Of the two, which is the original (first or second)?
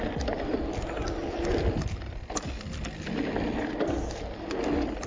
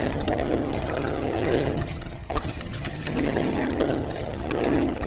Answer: first